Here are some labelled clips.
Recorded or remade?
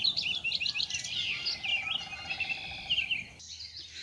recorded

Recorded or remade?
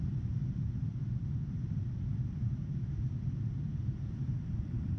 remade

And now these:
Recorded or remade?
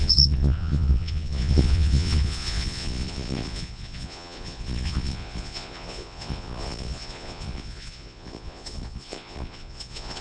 remade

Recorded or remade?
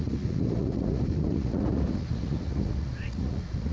remade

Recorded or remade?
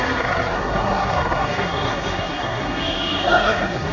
remade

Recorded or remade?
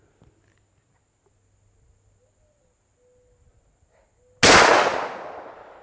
recorded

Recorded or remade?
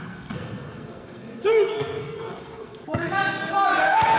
remade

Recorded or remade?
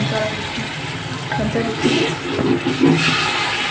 recorded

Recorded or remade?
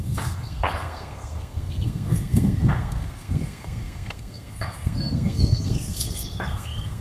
remade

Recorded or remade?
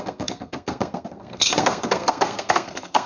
remade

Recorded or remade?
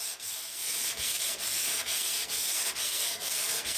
remade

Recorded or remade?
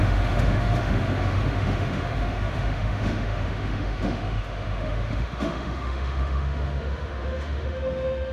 remade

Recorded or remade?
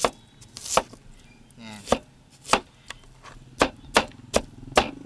recorded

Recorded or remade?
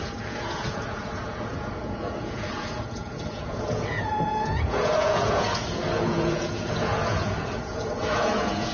remade